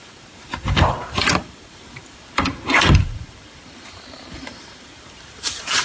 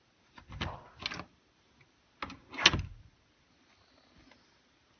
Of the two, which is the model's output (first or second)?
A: first